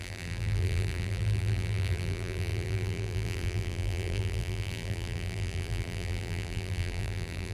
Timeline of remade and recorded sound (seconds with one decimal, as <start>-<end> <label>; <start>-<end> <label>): 0.0-7.5 remade